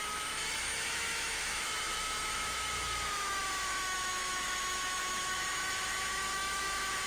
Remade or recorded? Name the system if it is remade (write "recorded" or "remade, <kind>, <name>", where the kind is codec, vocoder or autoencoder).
remade, autoencoder, DAC-VAE